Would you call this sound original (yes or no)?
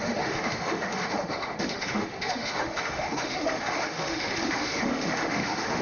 no